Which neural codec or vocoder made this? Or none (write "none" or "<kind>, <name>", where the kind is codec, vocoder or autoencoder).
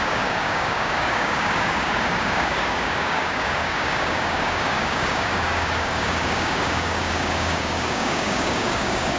codec, DAC